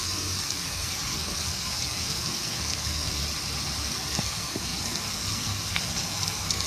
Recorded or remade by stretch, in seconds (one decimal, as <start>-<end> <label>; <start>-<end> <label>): 0.0-3.2 remade; 3.2-3.8 recorded; 3.8-6.7 remade